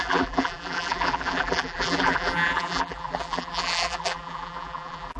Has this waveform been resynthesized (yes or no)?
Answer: yes